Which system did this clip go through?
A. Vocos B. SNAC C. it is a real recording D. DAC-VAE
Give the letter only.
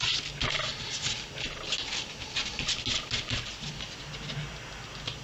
C